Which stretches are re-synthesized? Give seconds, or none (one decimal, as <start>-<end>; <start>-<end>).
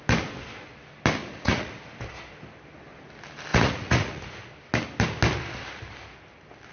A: 1.2-1.8; 3.5-4.2